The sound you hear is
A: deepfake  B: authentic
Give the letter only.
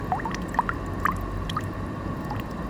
B